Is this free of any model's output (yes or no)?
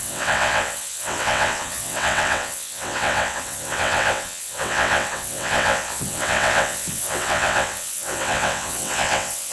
no